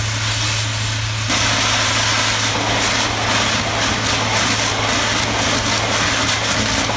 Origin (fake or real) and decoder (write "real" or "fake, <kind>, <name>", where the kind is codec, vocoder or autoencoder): real